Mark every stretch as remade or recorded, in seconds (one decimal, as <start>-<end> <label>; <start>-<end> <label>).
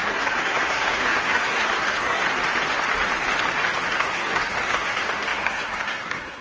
0.0-2.2 remade; 2.2-3.8 recorded; 3.8-6.4 remade